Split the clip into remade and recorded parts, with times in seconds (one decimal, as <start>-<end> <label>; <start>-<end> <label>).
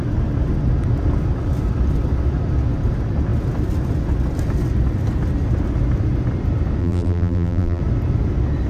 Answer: 0.0-6.8 recorded; 6.8-7.8 remade; 7.8-8.7 recorded